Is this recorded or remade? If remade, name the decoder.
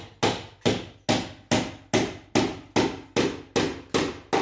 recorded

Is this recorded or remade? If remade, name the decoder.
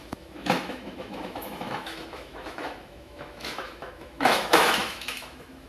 remade, autoencoder, DAC-VAE